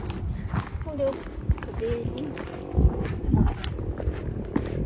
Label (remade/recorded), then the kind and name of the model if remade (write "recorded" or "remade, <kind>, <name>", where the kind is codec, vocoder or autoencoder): recorded